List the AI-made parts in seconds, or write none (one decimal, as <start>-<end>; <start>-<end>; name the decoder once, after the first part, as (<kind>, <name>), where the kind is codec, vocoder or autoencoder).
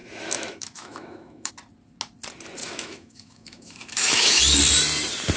0.0-1.5 (autoencoder, DAC-VAE); 2.6-4.4